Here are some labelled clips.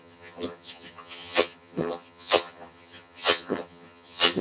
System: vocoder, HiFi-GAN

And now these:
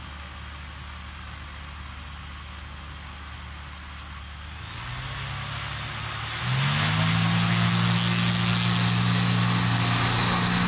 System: none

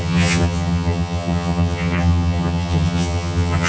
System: vocoder, HiFi-GAN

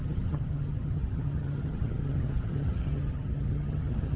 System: vocoder, HiFi-GAN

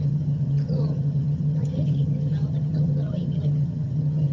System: vocoder, HiFi-GAN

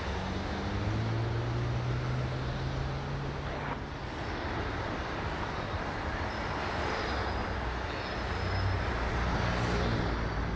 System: none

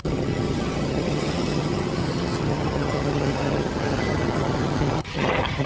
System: vocoder, HiFi-GAN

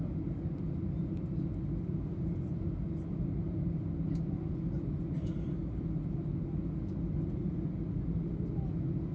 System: none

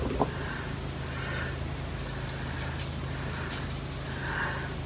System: none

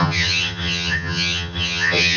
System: vocoder, HiFi-GAN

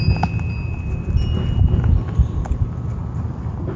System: none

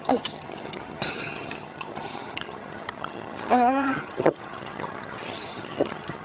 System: vocoder, HiFi-GAN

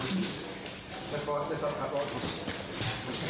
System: none